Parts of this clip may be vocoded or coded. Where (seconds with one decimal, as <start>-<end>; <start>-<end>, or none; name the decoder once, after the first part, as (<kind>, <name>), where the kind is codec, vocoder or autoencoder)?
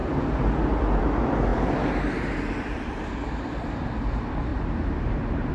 4.5-5.5 (vocoder, BigVGAN v2)